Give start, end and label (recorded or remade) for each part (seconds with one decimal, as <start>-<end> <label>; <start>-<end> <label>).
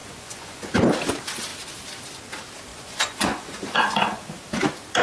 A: 0.0-0.7 remade; 0.7-2.7 recorded; 2.7-4.2 remade; 4.2-5.0 recorded